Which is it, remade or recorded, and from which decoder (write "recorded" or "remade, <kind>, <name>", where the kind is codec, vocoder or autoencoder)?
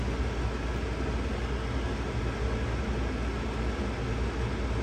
recorded